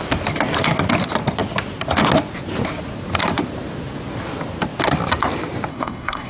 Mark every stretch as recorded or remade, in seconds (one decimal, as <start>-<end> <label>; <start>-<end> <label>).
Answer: 0.0-5.7 recorded; 5.7-6.3 remade